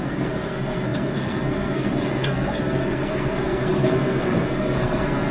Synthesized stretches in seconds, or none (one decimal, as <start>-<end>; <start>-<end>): 0.0-5.3